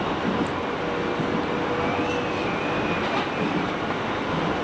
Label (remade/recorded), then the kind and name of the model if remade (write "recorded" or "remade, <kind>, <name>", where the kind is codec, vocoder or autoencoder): recorded